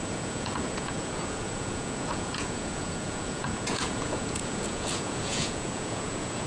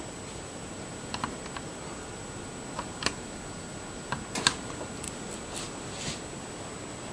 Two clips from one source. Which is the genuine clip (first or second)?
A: second